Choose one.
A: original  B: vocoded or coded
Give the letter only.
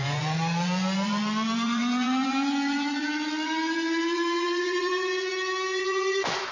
B